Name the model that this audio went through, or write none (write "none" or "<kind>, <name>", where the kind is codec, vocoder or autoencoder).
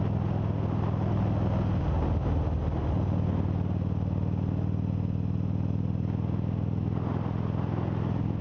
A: none